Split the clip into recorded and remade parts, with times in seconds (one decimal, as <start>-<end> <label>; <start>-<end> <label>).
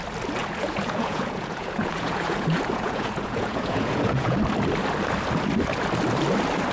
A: 0.0-0.4 recorded; 0.4-4.4 remade; 4.4-6.7 recorded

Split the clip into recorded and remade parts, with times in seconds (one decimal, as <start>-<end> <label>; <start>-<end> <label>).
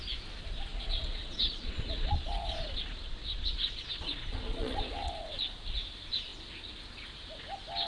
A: 0.0-0.7 recorded; 0.7-5.4 remade; 5.4-7.9 recorded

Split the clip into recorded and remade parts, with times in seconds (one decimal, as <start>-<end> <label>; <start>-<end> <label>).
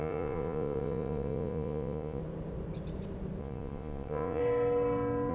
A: 0.0-2.2 remade; 2.2-3.4 recorded; 3.4-4.4 remade; 4.4-5.3 recorded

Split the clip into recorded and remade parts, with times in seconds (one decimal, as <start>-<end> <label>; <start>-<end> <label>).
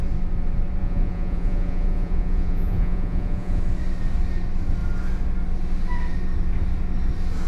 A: 0.0-0.8 recorded; 0.8-3.6 remade; 3.6-7.5 recorded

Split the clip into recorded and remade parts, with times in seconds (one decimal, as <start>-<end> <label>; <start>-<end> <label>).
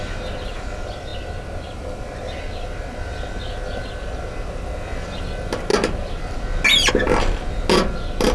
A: 0.0-8.3 recorded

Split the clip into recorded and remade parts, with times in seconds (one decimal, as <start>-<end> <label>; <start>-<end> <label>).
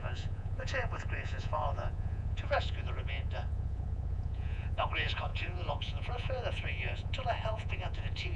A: 0.0-8.4 remade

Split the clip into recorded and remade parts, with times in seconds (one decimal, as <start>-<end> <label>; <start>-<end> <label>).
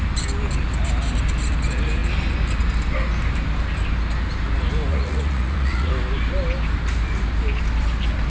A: 0.0-4.9 recorded; 4.9-5.9 remade; 5.9-8.3 recorded